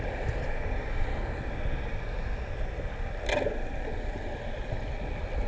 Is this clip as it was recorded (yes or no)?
yes